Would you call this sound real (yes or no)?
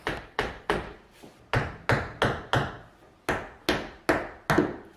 yes